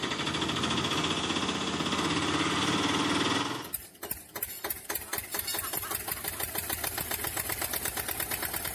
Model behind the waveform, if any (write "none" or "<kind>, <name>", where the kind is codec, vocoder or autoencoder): none